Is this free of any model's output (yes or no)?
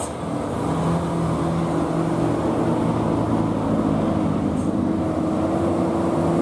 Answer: yes